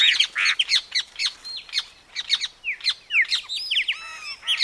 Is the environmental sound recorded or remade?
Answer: recorded